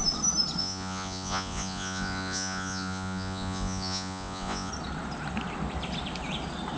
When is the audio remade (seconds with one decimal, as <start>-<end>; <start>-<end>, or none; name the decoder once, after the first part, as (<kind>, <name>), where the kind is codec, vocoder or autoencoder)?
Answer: 0.6-4.7 (vocoder, Vocos)

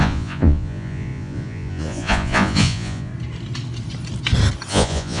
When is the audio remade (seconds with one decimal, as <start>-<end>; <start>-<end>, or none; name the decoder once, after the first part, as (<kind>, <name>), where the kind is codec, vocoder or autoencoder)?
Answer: 0.0-3.1 (vocoder, Vocos); 4.7-5.2

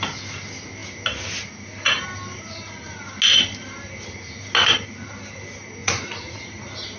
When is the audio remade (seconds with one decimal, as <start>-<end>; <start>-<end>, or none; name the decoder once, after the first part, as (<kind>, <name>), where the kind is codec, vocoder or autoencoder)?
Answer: 5.8-6.4 (vocoder, Vocos)

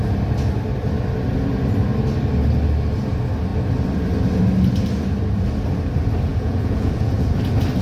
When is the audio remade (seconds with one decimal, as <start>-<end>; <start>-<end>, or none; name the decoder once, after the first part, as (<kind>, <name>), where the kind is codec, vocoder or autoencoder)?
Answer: 6.3-7.1 (vocoder, Vocos)

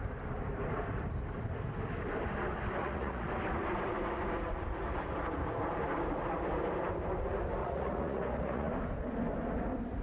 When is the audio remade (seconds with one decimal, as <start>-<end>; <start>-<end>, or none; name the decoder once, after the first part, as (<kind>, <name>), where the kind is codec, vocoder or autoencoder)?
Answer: 2.8-3.3 (vocoder, Vocos); 7.6-8.7